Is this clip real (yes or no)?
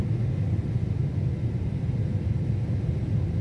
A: yes